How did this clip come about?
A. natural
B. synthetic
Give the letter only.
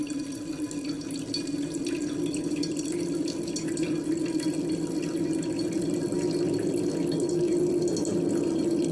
A